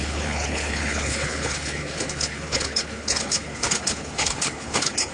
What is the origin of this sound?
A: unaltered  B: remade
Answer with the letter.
B